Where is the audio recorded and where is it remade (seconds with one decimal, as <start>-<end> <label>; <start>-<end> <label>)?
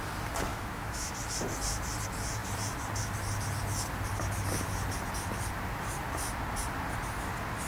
0.0-0.5 recorded; 0.5-1.1 remade; 1.1-7.7 recorded